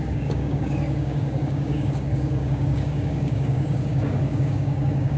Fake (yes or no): yes